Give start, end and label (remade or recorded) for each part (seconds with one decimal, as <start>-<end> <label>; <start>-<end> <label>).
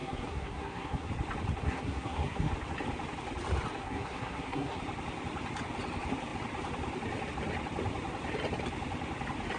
0.0-1.1 remade; 1.1-1.6 recorded; 1.6-2.5 remade; 2.5-3.8 recorded; 3.8-4.8 remade; 4.8-9.6 recorded